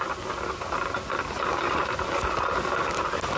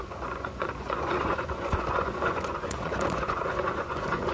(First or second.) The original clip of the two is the first